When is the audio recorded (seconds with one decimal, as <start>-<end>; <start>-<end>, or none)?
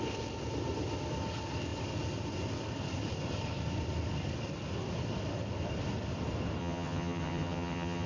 0.0-6.6